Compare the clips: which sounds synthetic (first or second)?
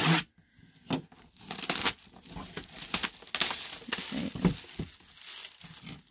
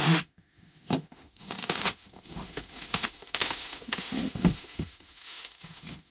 second